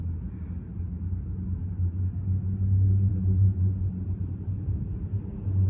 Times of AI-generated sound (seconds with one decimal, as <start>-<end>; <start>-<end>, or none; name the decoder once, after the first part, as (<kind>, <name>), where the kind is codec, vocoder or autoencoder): 3.1-5.2 (vocoder, BigVGAN v2)